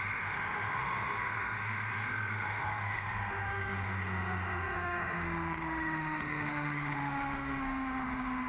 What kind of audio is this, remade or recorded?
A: remade